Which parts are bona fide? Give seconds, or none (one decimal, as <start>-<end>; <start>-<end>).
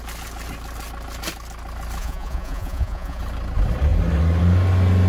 0.0-2.0; 3.2-5.1